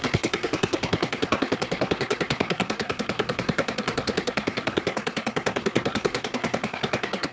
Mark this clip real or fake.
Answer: fake